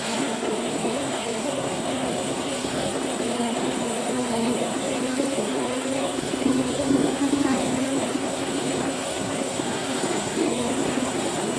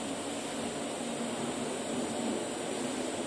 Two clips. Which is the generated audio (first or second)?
first